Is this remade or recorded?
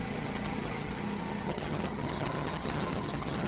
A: remade